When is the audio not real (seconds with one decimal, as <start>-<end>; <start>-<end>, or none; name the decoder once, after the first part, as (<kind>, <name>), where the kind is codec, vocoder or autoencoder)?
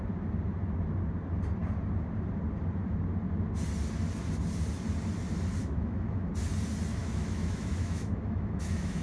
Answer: 5.6-6.3 (autoencoder, DAC-VAE); 7.0-9.0